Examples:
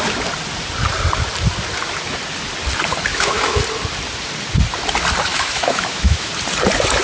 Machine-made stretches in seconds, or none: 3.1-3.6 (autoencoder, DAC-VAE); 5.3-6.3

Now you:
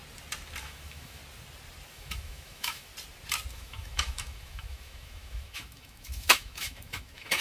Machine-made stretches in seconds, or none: 0.6-1.2 (autoencoder, DAC-VAE); 1.9-2.9; 3.5-7.4

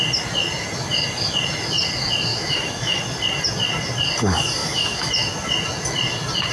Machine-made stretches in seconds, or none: 2.3-3.0 (autoencoder, DAC-VAE); 4.6-5.1

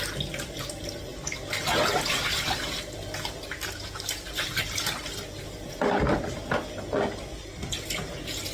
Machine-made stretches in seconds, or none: none

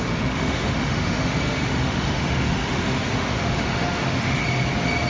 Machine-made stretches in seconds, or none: 0.0-4.4 (autoencoder, DAC-VAE)